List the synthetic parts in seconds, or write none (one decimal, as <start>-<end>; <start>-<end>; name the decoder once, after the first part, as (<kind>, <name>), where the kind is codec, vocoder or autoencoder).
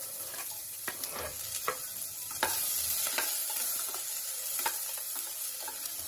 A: none